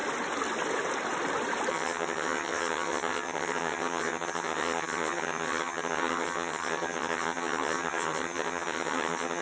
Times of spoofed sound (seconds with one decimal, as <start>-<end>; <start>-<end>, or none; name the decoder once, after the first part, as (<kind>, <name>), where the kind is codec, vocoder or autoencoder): 1.7-9.4 (vocoder, HiFi-GAN)